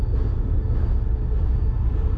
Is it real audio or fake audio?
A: real